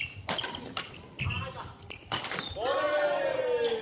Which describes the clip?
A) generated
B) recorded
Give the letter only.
B